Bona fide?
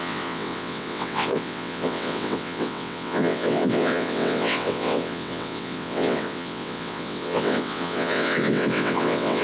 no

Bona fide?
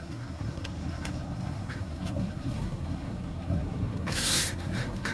no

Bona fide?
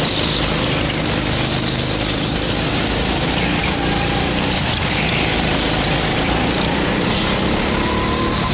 yes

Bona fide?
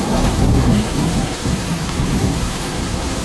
no